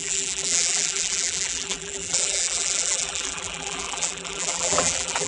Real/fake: fake